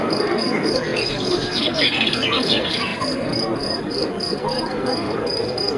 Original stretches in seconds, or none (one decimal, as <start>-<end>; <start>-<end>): none